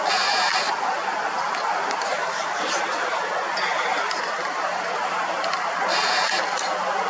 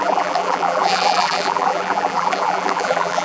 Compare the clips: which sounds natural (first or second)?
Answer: first